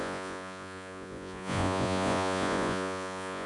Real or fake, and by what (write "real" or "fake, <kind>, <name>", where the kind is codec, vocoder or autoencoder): fake, vocoder, Vocos